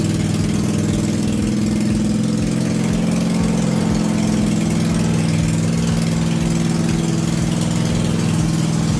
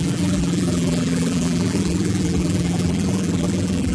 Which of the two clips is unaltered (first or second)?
first